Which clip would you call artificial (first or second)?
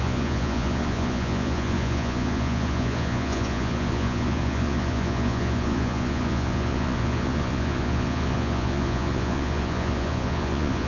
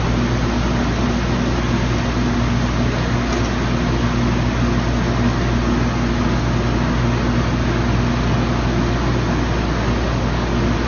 first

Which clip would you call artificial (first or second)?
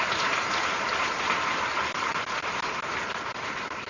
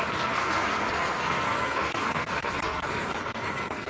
second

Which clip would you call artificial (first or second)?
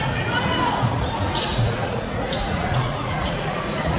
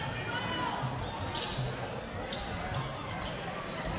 first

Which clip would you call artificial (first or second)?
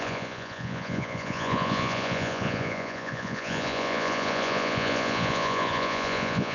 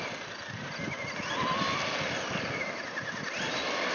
first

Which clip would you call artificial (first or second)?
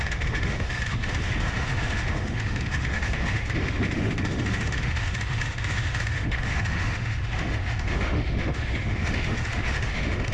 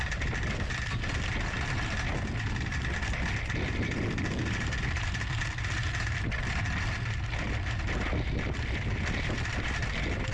first